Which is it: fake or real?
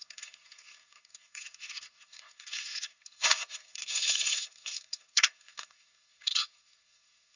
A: fake